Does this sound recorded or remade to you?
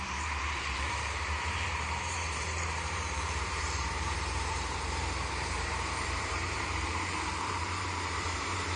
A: remade